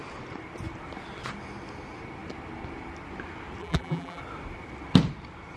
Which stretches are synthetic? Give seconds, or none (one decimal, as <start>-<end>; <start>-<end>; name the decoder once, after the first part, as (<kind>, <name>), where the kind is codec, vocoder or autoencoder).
3.6-4.2 (vocoder, BigVGAN v2)